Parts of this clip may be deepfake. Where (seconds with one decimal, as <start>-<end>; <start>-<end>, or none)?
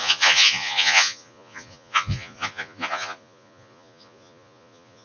0.0-5.0